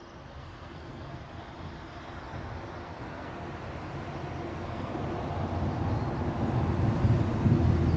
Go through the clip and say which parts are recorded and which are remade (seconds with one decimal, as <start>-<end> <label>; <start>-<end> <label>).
0.0-0.4 recorded; 0.4-1.2 remade; 1.2-2.8 recorded; 2.8-3.5 remade; 3.5-4.5 recorded; 4.5-5.0 remade; 5.0-8.0 recorded